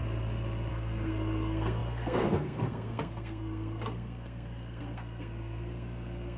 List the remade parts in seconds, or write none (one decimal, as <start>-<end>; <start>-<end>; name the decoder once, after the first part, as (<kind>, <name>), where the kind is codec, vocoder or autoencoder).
0.7-6.4 (codec, SNAC)